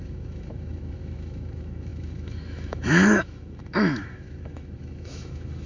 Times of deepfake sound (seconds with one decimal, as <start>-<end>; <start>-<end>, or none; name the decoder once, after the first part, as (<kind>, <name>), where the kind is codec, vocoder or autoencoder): 0.0-5.7 (autoencoder, DAC-VAE)